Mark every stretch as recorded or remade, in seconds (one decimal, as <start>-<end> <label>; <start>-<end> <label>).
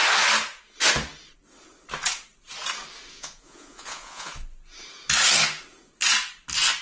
0.0-3.1 recorded; 3.1-4.3 remade; 4.3-6.8 recorded